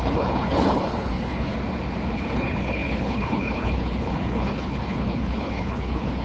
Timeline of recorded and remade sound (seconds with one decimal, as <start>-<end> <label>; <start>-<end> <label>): 0.0-1.5 remade; 1.5-2.1 recorded; 2.1-6.2 remade